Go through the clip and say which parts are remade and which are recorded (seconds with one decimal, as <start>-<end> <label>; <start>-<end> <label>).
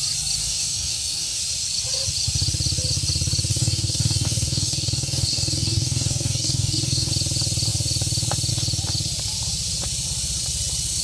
0.0-0.4 recorded; 0.4-1.4 remade; 1.4-3.5 recorded; 3.5-7.1 remade; 7.1-11.0 recorded